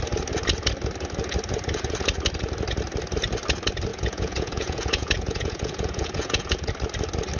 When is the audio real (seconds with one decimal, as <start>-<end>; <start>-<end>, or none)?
0.0-3.9; 6.7-7.4